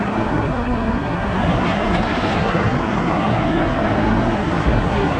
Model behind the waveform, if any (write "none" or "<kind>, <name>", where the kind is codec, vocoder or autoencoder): codec, SNAC